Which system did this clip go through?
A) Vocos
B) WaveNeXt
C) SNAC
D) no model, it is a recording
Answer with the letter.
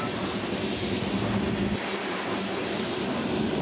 D